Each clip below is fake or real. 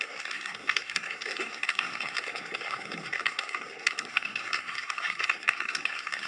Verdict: fake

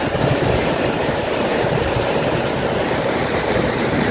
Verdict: fake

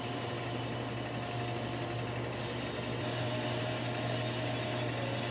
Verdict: real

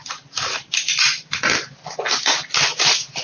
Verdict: real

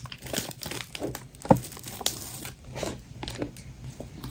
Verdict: real